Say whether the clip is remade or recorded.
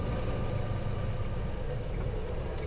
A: recorded